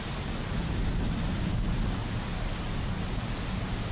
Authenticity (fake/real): real